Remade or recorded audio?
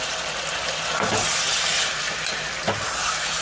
recorded